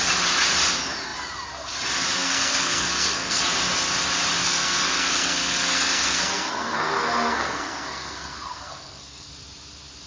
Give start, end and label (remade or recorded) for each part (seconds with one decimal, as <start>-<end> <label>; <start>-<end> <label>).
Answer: 0.0-2.2 recorded; 2.2-3.4 remade; 3.4-4.4 recorded; 4.4-9.3 remade; 9.3-10.1 recorded